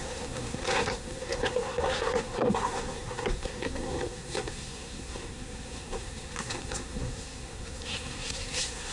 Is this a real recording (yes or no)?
no